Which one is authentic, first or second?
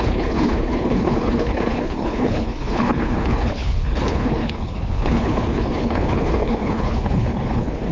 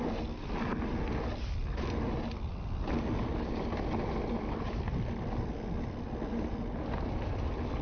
second